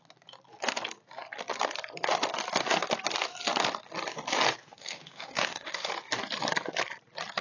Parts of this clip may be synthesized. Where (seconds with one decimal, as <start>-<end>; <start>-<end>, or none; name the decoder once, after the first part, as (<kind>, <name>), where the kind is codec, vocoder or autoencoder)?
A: 4.6-5.9 (autoencoder, DAC-VAE)